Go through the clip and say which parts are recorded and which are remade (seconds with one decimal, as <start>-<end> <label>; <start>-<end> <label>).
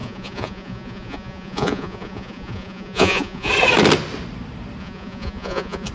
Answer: 0.0-3.5 remade; 3.5-4.8 recorded; 4.8-5.9 remade